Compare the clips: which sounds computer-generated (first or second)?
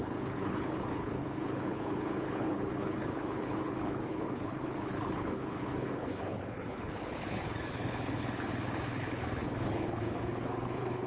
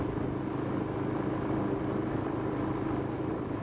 first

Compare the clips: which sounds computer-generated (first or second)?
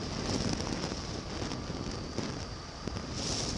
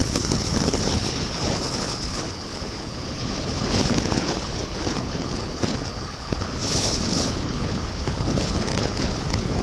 second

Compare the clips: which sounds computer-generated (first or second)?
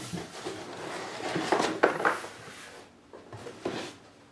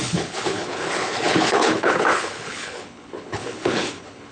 second